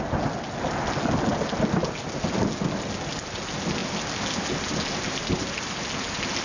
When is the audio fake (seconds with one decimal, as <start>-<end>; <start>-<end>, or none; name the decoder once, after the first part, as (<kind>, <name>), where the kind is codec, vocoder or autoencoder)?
none